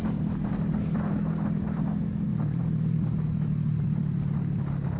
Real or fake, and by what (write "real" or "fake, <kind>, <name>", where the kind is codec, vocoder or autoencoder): real